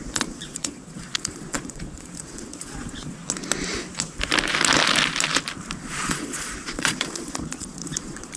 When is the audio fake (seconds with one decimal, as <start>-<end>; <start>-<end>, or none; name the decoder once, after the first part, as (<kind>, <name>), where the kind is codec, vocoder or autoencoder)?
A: 0.0-3.2 (vocoder, Vocos); 5.8-8.4